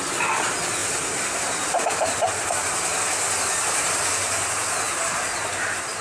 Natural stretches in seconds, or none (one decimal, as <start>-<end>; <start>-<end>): 0.0-0.8; 3.4-6.0